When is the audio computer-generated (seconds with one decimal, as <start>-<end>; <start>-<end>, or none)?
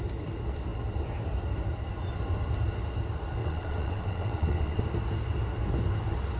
3.4-4.8